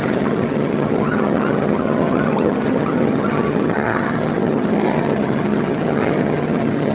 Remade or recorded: remade